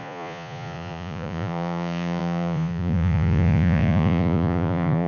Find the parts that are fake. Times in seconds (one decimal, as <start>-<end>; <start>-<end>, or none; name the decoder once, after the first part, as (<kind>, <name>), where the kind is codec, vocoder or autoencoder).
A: 0.0-5.1 (vocoder, Vocos)